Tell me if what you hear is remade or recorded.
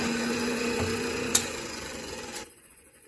remade